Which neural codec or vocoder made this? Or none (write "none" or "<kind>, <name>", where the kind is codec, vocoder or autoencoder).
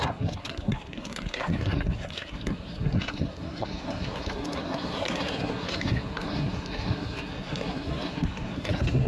codec, SNAC